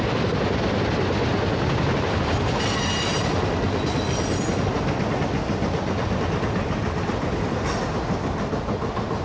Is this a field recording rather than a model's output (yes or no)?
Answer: yes